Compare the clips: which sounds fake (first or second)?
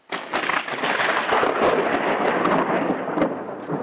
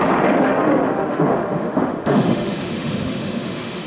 second